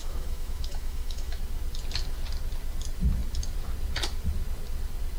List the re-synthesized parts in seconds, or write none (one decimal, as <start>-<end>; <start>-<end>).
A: 0.0-1.4